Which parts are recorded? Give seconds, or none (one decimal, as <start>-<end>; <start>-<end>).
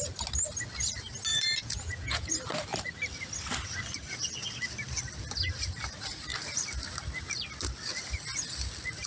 0.0-1.3; 2.3-9.1